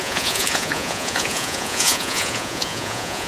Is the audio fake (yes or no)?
yes